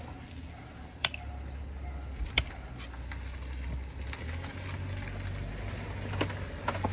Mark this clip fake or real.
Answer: real